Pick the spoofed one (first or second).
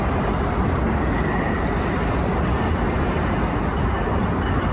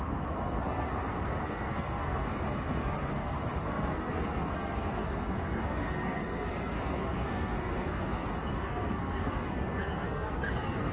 second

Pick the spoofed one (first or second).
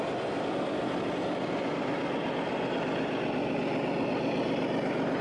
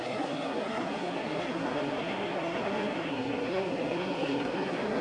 second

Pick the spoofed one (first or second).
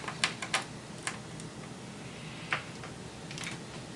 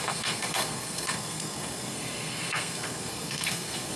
second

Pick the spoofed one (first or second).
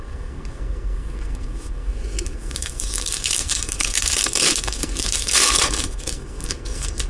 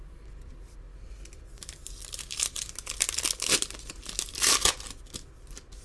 first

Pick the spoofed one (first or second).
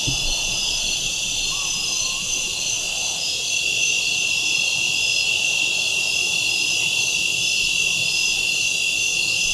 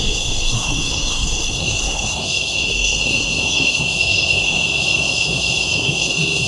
second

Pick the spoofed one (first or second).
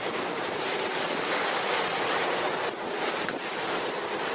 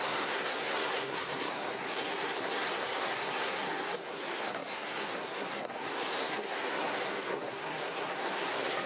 second